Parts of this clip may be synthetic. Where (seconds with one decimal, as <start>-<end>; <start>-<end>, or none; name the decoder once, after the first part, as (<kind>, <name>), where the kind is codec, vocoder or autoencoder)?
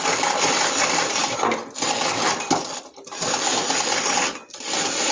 none